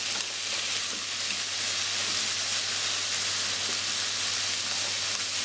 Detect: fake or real real